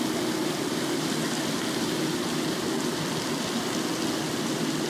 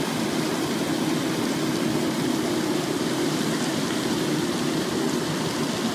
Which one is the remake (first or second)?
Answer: second